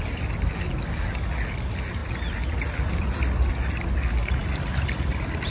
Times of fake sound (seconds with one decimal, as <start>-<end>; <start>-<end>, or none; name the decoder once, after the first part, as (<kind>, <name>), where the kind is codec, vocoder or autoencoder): 2.0-3.5 (vocoder, BigVGAN v2); 4.4-5.1